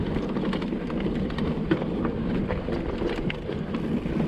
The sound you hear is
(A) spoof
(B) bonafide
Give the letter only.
B